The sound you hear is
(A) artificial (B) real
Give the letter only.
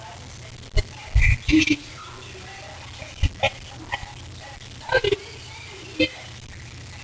B